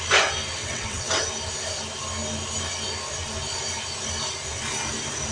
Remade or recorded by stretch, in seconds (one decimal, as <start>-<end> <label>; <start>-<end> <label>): 0.0-0.6 recorded; 0.6-1.2 remade; 1.2-5.3 recorded